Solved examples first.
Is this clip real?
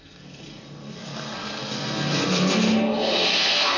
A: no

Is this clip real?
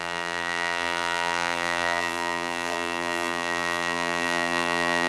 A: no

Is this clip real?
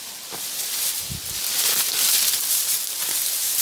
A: yes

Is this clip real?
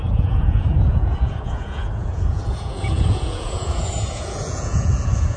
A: no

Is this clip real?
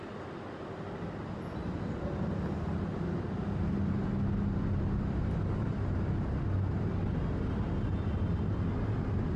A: yes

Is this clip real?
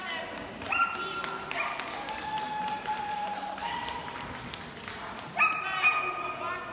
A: yes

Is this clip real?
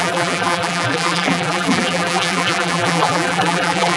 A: no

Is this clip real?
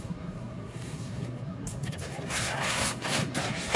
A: no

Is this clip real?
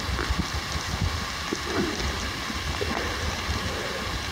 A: yes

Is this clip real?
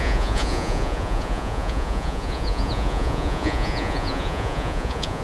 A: no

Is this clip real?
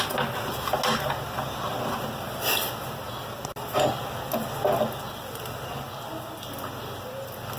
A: yes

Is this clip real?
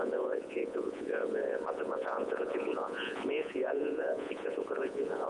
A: no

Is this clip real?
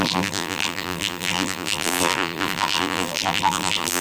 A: no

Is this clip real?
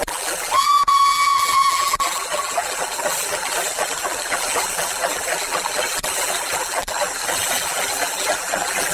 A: no